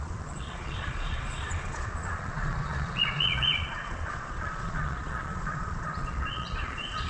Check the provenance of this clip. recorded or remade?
remade